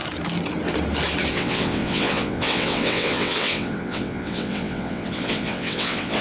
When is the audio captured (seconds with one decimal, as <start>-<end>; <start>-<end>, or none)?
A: 0.0-1.3